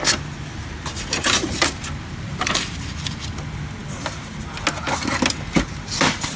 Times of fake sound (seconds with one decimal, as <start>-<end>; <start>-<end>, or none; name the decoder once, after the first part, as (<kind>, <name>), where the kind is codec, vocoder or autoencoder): 1.4-3.2 (vocoder, BigVGAN v2)